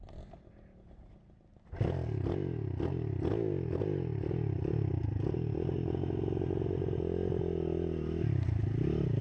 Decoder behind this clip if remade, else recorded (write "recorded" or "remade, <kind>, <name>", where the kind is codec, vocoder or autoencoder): recorded